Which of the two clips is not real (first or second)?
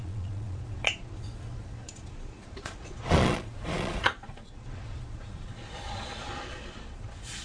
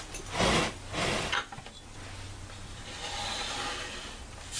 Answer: first